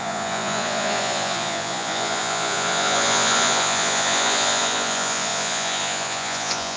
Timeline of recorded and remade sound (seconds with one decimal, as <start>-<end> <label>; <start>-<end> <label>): 0.0-6.8 remade